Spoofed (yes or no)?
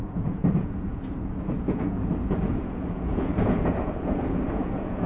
yes